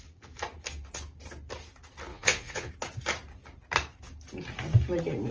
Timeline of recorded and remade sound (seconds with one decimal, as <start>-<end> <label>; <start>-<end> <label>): 0.0-2.1 recorded; 2.1-2.7 remade; 2.7-5.3 recorded